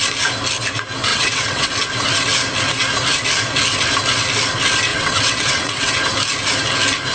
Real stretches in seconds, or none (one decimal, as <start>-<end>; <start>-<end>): 0.0-1.1; 1.7-4.9; 6.0-7.1